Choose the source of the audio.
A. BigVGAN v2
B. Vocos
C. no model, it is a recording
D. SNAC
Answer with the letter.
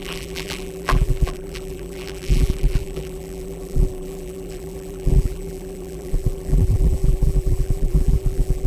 A